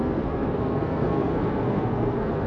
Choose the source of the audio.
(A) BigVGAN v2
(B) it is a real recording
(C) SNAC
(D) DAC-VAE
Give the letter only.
C